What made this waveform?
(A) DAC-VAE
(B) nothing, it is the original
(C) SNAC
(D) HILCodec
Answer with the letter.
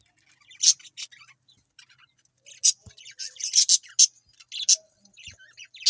B